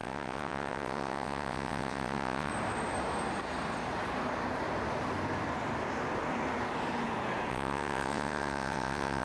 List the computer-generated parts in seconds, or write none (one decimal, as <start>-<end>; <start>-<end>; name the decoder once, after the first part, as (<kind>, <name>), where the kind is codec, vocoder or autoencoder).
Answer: 0.0-2.5 (vocoder, WaveNeXt); 7.5-9.2

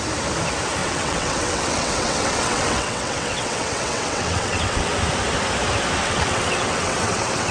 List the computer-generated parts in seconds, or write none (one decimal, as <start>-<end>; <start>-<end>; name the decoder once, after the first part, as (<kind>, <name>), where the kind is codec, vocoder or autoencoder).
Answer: 0.8-4.9 (vocoder, WaveNeXt); 6.0-7.5

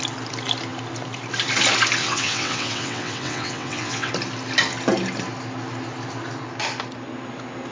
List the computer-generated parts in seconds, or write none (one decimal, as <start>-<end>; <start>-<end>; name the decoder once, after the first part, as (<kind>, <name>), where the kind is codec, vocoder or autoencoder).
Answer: 2.0-4.1 (vocoder, WaveNeXt)

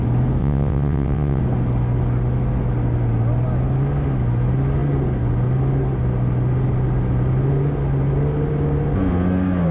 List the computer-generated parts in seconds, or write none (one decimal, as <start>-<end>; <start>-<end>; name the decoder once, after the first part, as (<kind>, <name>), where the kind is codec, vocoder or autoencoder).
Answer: 0.4-1.4 (vocoder, WaveNeXt)

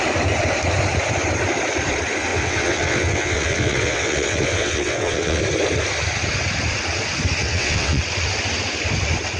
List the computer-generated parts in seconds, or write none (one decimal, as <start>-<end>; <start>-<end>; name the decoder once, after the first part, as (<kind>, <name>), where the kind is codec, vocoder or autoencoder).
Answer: 2.3-5.4 (vocoder, WaveNeXt); 7.4-8.0

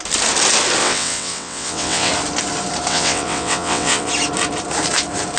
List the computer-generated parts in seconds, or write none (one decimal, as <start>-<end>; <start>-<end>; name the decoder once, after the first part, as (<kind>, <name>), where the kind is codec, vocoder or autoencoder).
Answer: 0.8-2.1 (vocoder, WaveNeXt); 2.9-4.1

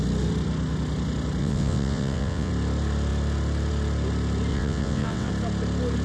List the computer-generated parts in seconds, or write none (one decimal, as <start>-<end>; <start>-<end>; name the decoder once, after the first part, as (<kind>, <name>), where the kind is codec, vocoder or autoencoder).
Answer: 1.4-2.5 (vocoder, WaveNeXt); 4.5-5.3